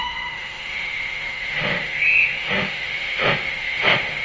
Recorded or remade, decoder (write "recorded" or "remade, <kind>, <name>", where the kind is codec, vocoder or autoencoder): remade, autoencoder, DAC-VAE